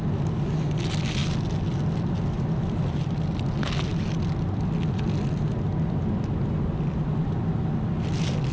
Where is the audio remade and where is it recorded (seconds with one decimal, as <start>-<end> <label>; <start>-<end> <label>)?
0.0-8.5 recorded